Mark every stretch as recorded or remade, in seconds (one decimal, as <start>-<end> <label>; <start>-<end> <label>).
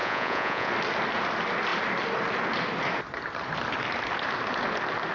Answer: 0.0-0.7 remade; 0.7-5.1 recorded